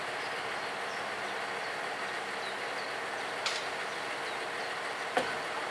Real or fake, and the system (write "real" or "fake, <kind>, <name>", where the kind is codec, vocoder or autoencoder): real